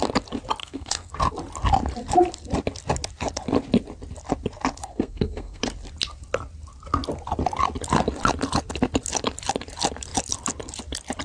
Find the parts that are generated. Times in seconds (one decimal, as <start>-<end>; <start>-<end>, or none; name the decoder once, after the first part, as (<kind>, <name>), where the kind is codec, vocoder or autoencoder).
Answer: 0.6-1.1 (codec, SNAC); 4.8-5.6